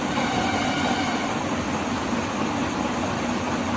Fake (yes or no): no